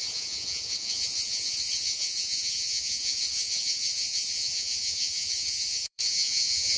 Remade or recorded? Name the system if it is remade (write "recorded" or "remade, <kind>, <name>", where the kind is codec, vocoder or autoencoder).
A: remade, vocoder, Vocos